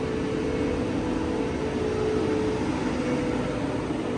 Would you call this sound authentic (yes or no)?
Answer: yes